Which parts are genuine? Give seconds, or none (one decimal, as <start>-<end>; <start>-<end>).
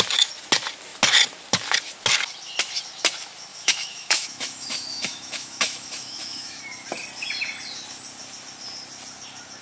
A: 0.0-3.5; 6.6-9.6